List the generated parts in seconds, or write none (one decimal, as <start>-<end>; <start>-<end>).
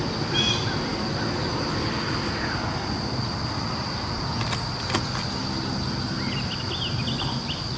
none